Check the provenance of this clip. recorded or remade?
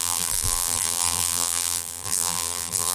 remade